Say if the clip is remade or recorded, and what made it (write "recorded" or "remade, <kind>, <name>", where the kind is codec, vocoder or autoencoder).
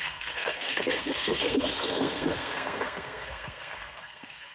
remade, codec, SNAC